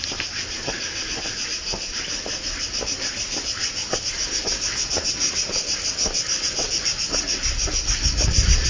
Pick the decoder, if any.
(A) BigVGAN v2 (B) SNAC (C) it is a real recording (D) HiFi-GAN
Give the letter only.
C